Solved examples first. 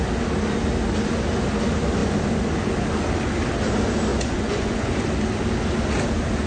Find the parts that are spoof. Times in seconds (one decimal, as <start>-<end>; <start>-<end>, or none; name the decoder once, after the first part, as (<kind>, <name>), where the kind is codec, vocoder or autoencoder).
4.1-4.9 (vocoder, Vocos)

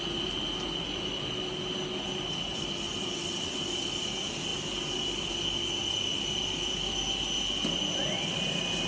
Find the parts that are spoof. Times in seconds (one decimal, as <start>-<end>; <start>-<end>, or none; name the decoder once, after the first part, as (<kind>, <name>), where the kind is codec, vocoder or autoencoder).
none

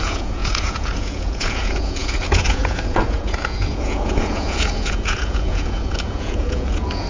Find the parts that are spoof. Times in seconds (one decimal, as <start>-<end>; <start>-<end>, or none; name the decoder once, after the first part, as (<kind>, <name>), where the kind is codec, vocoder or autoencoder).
0.0-7.1 (vocoder, Vocos)